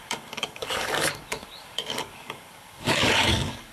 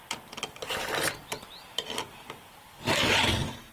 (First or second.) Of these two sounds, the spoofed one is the first